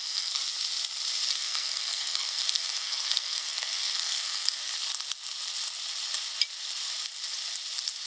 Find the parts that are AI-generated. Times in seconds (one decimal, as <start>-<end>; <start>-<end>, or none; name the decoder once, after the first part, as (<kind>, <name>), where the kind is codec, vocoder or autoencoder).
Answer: 0.0-0.4 (codec, SNAC); 1.3-4.7